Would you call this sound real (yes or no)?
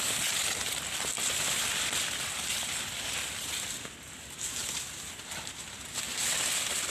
yes